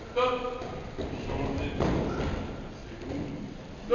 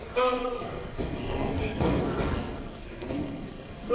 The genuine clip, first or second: first